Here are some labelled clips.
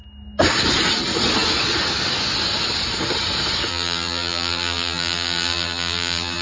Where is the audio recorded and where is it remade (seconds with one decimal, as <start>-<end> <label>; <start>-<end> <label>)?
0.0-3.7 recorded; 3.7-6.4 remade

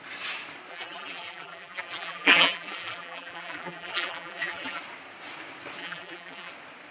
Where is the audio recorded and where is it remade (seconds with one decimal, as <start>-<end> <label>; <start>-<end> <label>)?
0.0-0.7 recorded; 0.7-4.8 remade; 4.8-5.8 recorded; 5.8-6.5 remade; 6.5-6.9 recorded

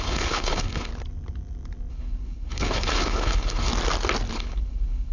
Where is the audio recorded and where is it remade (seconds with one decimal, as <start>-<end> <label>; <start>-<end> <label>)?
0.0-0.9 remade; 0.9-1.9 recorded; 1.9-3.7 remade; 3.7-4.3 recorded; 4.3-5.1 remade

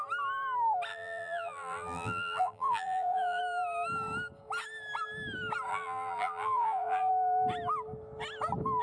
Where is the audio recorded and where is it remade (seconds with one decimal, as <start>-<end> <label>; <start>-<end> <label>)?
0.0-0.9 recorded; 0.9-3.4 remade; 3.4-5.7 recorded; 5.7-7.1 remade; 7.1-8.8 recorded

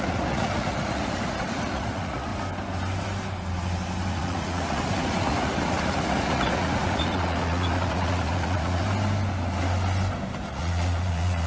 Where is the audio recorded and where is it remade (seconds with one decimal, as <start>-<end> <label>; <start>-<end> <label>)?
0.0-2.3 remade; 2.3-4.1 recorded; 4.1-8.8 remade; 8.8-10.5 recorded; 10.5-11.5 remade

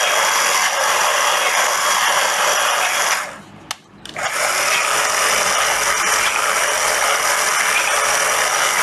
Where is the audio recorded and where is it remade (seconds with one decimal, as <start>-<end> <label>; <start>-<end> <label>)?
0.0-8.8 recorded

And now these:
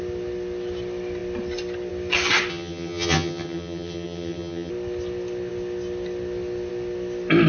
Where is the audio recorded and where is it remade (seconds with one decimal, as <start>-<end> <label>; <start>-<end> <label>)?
0.0-2.5 recorded; 2.5-4.7 remade; 4.7-7.5 recorded